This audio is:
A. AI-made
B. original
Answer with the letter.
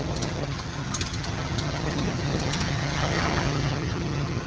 A